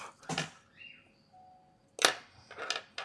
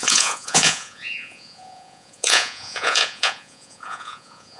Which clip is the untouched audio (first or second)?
first